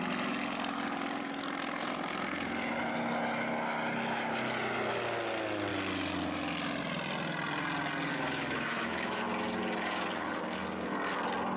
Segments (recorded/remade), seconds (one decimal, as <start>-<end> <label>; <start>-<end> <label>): 0.0-8.1 recorded; 8.1-9.2 remade; 9.2-11.6 recorded